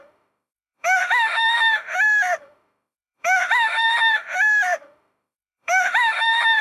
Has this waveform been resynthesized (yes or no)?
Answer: yes